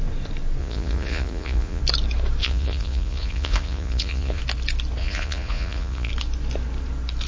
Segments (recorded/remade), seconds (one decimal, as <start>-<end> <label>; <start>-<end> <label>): 0.0-0.6 recorded; 0.6-1.8 remade; 1.8-2.4 recorded; 2.4-4.4 remade; 4.4-5.0 recorded; 5.0-6.1 remade; 6.1-7.3 recorded